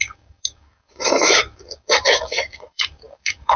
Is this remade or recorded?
remade